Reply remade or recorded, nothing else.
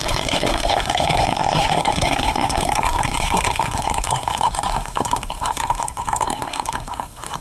remade